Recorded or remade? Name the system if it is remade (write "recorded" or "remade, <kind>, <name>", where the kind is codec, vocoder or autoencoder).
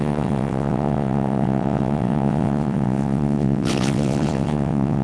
remade, vocoder, WaveNeXt